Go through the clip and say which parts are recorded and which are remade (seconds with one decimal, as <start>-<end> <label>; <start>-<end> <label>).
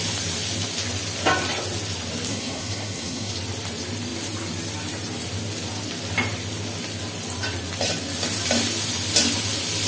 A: 0.0-2.3 recorded; 2.3-3.3 remade; 3.3-9.9 recorded